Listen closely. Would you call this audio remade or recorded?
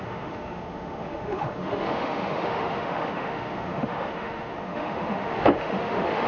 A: remade